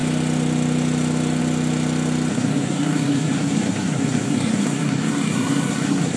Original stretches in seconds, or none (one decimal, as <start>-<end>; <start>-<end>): 0.0-2.3